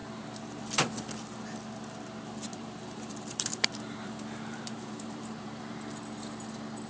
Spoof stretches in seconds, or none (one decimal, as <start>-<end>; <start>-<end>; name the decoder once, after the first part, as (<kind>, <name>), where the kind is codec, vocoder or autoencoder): 0.0-0.6 (vocoder, BigVGAN v2); 2.5-5.6